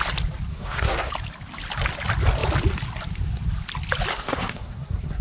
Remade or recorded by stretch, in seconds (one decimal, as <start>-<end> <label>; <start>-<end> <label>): 0.0-0.5 recorded; 0.5-1.1 remade; 1.1-4.1 recorded; 4.1-5.2 remade